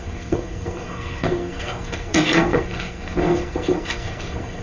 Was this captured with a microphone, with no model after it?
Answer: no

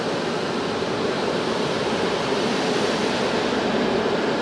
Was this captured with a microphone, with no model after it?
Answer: yes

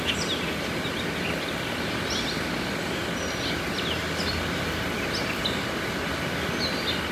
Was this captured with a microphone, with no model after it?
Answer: yes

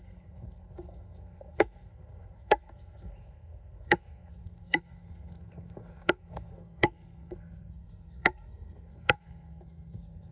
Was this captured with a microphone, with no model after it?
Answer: no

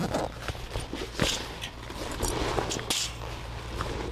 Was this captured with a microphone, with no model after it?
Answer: yes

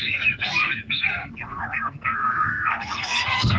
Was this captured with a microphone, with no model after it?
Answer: no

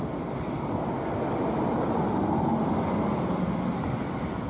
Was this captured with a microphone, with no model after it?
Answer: yes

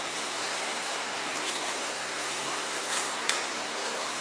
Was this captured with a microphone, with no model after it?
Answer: no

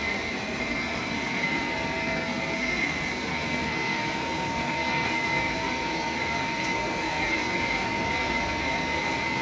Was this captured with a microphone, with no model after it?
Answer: no